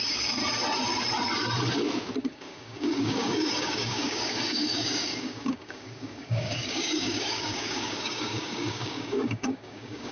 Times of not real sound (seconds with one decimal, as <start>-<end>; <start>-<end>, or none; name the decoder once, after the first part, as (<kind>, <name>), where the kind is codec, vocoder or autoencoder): 0.0-0.4 (codec, DAC); 2.2-10.1